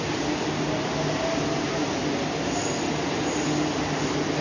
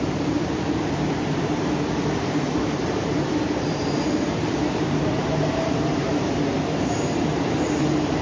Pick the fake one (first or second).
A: second